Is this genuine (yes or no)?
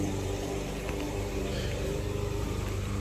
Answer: no